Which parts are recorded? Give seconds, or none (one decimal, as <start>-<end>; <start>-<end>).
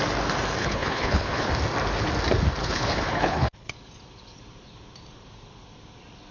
0.0-0.6; 1.5-2.6; 3.7-6.3